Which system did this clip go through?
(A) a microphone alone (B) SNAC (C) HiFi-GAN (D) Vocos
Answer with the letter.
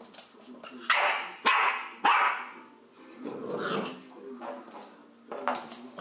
A